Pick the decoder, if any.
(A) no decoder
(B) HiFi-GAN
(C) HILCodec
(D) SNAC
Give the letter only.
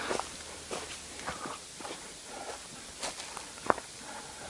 A